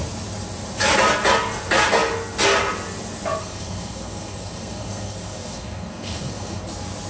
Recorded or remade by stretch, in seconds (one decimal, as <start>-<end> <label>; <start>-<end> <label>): 0.0-3.4 recorded; 3.4-6.6 remade; 6.6-7.1 recorded